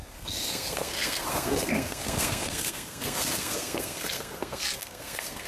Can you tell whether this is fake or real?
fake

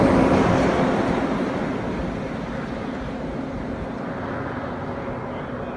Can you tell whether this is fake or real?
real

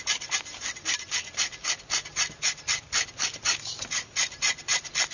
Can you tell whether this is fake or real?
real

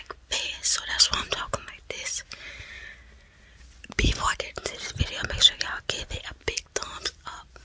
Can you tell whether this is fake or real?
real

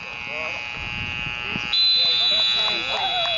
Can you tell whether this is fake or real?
real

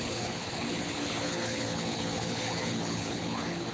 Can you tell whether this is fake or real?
fake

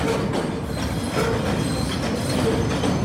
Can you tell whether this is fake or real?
real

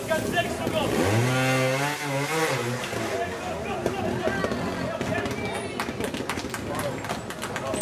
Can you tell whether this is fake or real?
real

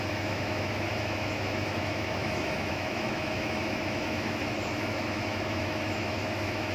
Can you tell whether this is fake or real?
fake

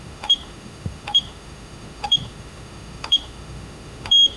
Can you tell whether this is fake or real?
fake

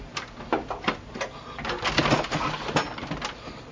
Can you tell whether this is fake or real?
real